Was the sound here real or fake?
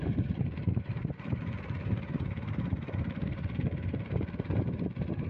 fake